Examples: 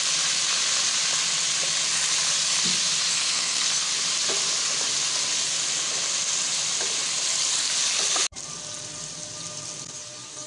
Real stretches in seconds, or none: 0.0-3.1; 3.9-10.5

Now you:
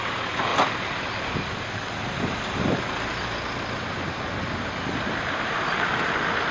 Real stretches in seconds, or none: 0.0-6.5

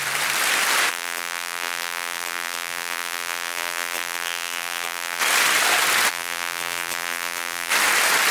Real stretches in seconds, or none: 0.0-0.9; 5.2-6.1; 7.7-8.3

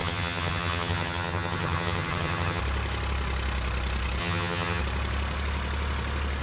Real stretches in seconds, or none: 2.6-4.2; 4.8-6.4

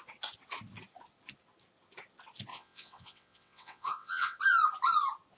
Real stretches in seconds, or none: 0.0-2.5; 4.4-5.4

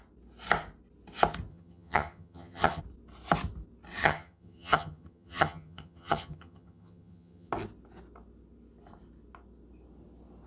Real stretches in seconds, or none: 0.0-1.5; 2.8-4.0; 7.5-10.5

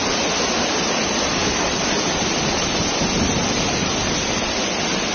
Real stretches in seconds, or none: 0.0-5.1

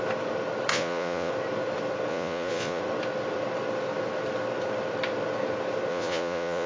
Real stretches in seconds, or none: 0.0-0.7; 1.3-2.1; 2.8-5.9